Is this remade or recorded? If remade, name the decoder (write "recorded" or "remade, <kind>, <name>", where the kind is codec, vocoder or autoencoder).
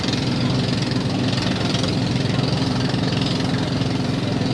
recorded